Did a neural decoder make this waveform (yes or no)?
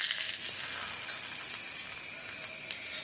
no